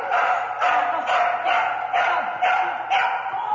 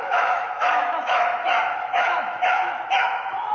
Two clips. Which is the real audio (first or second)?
first